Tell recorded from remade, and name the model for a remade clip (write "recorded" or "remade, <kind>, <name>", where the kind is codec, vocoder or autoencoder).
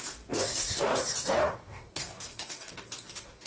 remade, codec, DAC